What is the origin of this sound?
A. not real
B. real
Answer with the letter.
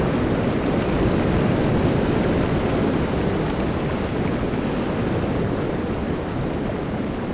B